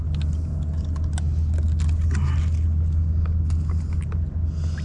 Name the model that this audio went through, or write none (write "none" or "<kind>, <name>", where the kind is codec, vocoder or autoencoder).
none